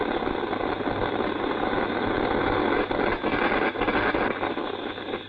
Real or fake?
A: real